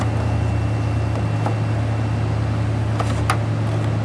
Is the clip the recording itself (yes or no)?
yes